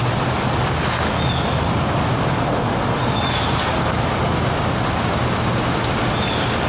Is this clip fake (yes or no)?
no